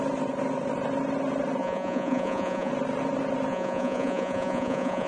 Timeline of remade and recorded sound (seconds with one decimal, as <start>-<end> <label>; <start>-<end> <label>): 0.0-1.6 recorded; 1.6-2.7 remade; 2.7-3.5 recorded; 3.5-5.1 remade